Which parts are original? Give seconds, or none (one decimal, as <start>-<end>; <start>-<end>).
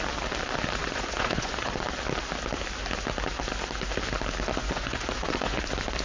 0.0-0.8; 1.8-4.6; 5.6-6.0